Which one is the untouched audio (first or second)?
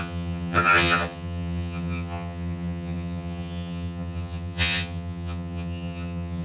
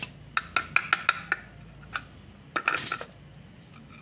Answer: second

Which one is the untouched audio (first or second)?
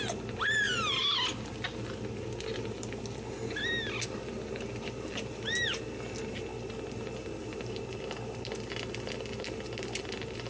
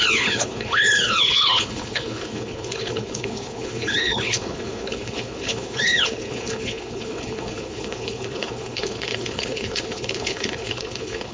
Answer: first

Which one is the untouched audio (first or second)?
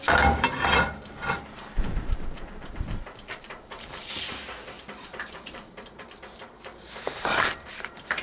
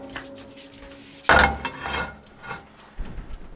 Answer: second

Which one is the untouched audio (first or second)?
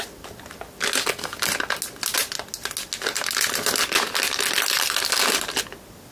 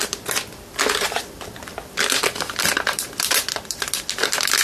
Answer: first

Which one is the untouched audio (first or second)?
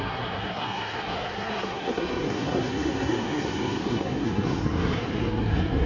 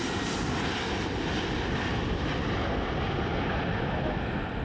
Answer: second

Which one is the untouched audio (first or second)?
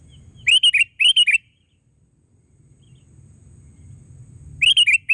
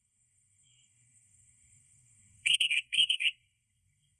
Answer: first